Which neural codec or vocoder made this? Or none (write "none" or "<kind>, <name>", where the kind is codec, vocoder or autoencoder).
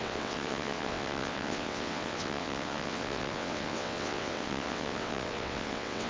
vocoder, WaveNeXt